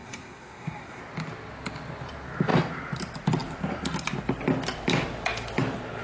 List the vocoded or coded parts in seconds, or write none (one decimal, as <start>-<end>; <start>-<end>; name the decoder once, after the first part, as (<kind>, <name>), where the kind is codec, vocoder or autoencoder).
0.0-1.0 (codec, SNAC)